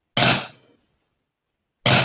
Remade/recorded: recorded